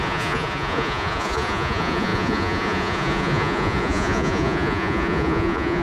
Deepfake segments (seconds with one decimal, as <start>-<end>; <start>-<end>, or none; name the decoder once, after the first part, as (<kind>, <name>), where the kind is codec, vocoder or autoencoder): 0.0-5.8 (vocoder, Vocos)